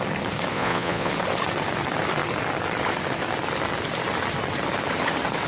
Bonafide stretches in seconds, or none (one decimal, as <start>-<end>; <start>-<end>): 0.0-0.5; 1.1-5.5

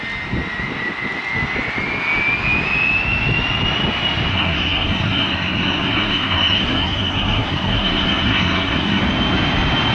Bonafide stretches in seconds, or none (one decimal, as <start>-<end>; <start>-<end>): 0.0-4.3; 9.0-9.9

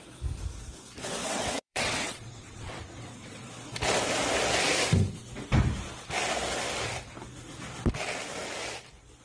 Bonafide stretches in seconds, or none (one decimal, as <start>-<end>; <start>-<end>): 0.0-1.2; 3.5-9.2

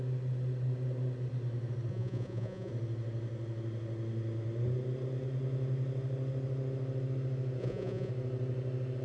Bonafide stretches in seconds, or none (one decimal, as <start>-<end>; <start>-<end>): 0.0-1.9; 2.7-7.6; 8.1-9.0

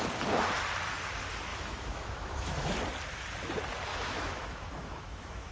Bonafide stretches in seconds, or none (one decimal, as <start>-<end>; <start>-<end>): 0.0-1.5; 2.7-3.9

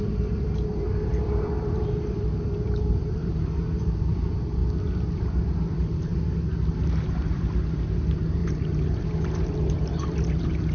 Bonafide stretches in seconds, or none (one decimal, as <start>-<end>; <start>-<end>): 4.6-5.4

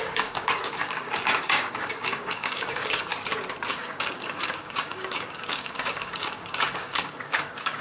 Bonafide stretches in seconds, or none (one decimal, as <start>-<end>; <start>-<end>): 3.1-3.7

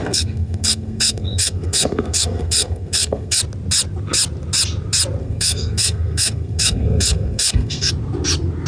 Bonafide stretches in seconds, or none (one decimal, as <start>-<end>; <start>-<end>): 3.4-5.2; 7.9-8.7